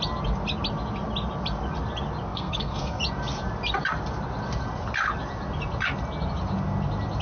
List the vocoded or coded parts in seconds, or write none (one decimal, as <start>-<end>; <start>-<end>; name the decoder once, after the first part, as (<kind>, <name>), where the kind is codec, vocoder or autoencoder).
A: 2.3-3.0 (codec, SNAC)